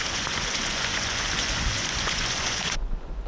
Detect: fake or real fake